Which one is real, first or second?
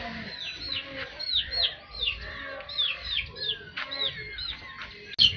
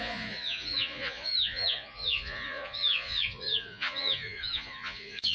first